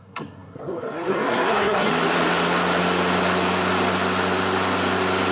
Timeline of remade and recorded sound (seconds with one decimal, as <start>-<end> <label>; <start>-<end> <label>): 0.0-1.9 remade; 1.9-5.3 recorded